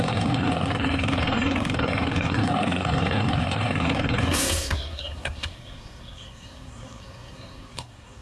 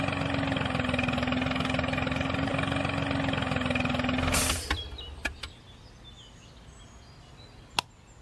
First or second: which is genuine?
second